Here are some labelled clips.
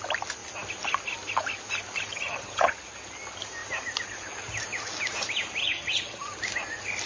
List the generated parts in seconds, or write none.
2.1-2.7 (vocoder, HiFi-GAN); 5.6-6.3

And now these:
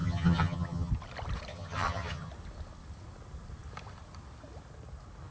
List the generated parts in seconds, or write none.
0.0-0.9 (vocoder, HiFi-GAN); 1.5-2.3

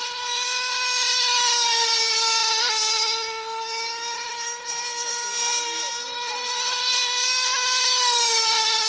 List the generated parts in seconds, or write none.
none

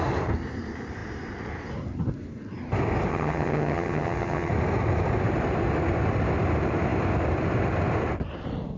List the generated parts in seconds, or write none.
3.1-4.5 (vocoder, HiFi-GAN)

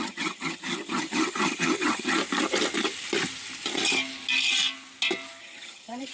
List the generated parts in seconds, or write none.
0.0-2.2 (vocoder, HiFi-GAN); 5.4-6.1

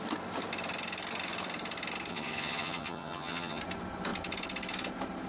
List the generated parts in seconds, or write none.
2.1-3.6 (vocoder, HiFi-GAN)

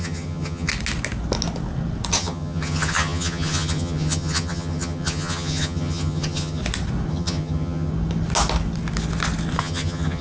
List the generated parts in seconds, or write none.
0.0-0.7 (vocoder, HiFi-GAN); 2.1-6.6; 7.1-7.9; 9.6-10.2